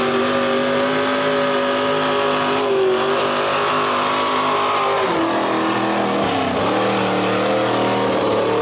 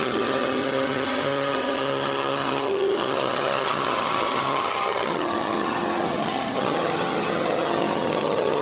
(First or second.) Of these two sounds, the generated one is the second